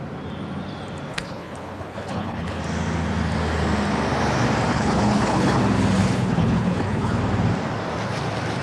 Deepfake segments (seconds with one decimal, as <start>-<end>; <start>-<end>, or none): 1.1-2.6; 4.7-5.6; 6.0-7.2